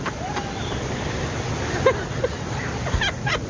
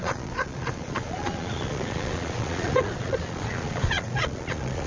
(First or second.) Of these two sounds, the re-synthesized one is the second